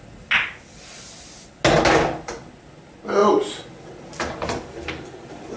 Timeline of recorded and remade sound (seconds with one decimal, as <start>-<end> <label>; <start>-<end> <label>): 0.0-3.2 recorded; 3.2-5.6 remade